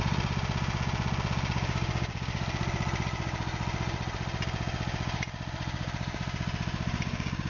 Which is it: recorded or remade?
recorded